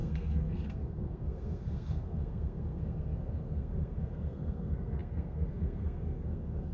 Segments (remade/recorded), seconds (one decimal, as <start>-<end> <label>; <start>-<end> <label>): 0.0-6.7 remade